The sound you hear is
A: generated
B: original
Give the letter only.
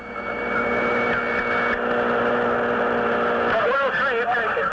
B